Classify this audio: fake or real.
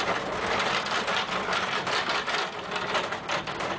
real